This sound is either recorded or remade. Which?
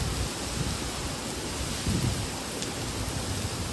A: recorded